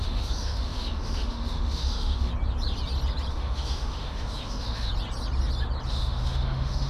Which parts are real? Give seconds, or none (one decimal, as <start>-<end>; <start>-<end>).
2.3-3.3; 4.9-5.9